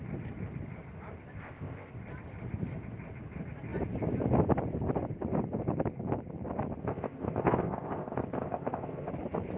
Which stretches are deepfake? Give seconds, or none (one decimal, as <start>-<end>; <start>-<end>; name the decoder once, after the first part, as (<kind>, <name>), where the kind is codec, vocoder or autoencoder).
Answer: 1.4-1.9 (codec, ZipCodec); 6.8-9.1